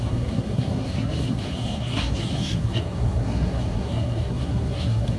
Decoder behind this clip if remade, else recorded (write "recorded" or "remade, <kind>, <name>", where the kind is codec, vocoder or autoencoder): remade, codec, SNAC